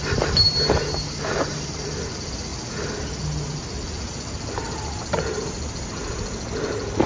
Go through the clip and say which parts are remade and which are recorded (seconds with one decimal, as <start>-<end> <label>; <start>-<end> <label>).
0.0-7.1 recorded